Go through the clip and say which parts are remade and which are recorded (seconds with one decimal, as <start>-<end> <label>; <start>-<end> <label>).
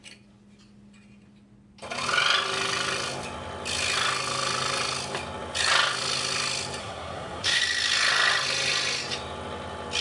0.0-6.8 recorded; 6.8-7.6 remade; 7.6-10.0 recorded